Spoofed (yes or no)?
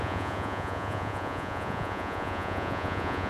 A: yes